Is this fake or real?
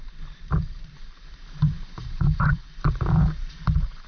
fake